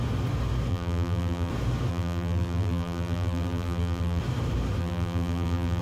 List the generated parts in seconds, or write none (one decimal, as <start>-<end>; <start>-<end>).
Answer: 0.7-1.5; 1.9-4.2; 4.8-5.8